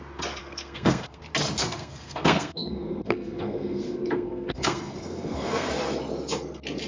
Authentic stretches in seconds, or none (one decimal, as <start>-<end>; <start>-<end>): 0.0-0.4; 1.2-1.6; 5.7-6.9